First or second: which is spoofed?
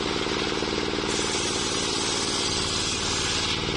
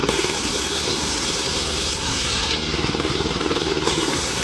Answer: second